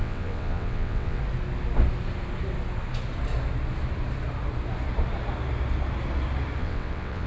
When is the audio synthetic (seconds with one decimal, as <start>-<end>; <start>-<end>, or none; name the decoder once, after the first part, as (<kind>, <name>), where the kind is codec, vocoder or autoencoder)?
0.0-1.2 (vocoder, WaveNeXt); 6.6-7.3